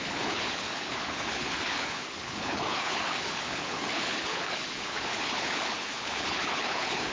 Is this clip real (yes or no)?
no